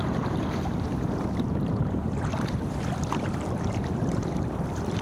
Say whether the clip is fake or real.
fake